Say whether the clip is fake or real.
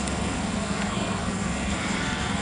fake